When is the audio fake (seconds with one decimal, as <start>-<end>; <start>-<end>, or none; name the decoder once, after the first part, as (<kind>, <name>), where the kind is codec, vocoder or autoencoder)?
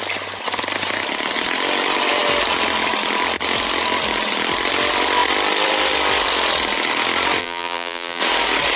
7.4-8.2 (vocoder, BigVGAN v2)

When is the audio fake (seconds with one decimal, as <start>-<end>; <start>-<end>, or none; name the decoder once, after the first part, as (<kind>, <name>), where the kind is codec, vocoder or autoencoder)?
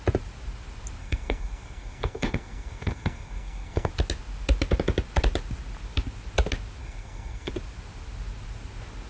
1.0-3.9 (codec, SNAC); 6.8-7.5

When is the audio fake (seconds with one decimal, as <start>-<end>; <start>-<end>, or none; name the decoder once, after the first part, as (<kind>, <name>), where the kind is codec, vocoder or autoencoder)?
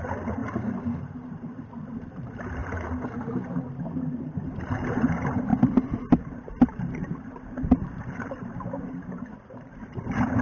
0.0-0.4 (vocoder, BigVGAN v2); 1.0-2.6; 4.0-10.4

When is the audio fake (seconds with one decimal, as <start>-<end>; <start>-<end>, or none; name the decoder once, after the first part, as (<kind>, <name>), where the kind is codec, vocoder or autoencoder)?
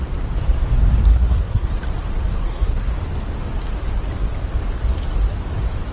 1.1-1.7 (codec, SNAC); 2.3-2.9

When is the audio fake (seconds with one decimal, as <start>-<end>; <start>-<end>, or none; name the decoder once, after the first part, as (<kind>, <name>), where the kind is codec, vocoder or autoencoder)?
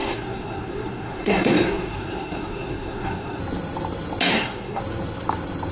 0.0-3.4 (codec, SNAC); 4.3-4.8